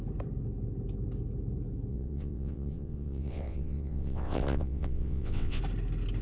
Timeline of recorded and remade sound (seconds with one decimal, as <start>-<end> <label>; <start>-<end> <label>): 0.0-1.9 recorded; 1.9-5.6 remade; 5.6-6.2 recorded

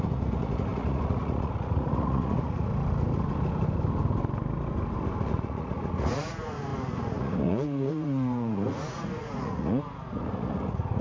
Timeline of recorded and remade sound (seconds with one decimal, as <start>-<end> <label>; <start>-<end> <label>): 0.0-2.7 remade; 2.7-5.3 recorded; 5.3-11.0 remade

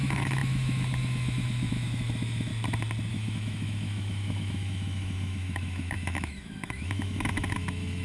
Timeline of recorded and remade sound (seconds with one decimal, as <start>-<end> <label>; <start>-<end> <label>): 0.0-2.5 remade; 2.5-3.1 recorded; 3.1-8.0 remade

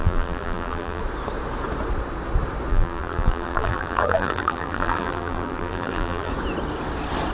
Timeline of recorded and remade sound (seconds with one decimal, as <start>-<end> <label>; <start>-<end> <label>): 0.0-1.0 remade; 1.0-2.7 recorded; 2.7-6.3 remade; 6.3-7.3 recorded